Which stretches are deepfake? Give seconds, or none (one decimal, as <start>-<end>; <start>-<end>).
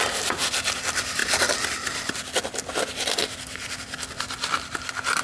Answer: none